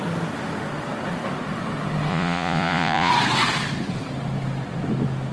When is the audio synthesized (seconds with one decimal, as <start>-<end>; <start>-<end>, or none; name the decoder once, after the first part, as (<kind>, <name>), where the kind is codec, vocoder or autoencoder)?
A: 2.1-3.1 (vocoder, Vocos)